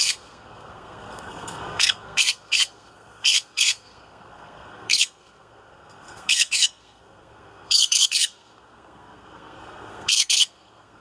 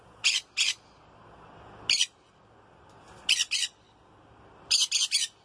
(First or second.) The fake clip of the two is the first